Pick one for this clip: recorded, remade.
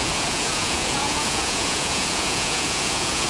remade